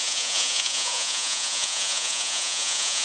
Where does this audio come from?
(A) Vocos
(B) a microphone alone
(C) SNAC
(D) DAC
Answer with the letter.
A